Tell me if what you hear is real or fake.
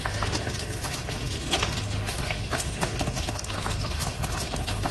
fake